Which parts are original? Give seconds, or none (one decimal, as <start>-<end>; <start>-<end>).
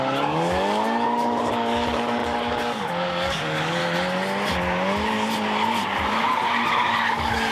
3.8-6.7